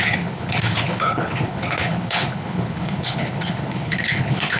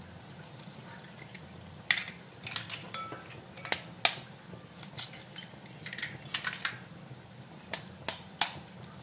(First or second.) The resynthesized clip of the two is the first